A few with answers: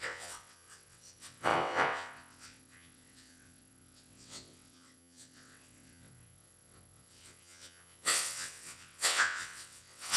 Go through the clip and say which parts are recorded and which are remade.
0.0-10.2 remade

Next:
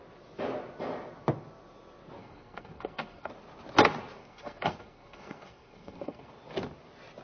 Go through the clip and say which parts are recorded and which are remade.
0.0-2.2 recorded; 2.2-3.3 remade; 3.3-4.2 recorded; 4.2-6.3 remade; 6.3-7.2 recorded